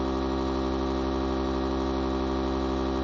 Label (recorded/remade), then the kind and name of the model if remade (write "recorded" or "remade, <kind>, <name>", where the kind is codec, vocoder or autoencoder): recorded